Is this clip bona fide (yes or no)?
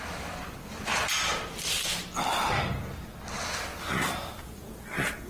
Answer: yes